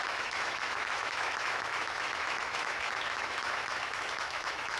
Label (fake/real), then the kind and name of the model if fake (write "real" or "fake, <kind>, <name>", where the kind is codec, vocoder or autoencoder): fake, autoencoder, DAC-VAE